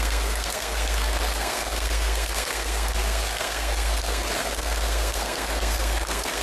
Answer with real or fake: fake